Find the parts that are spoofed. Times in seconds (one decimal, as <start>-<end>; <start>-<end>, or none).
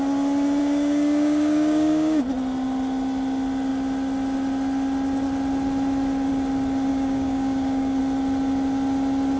0.6-2.2; 6.9-8.0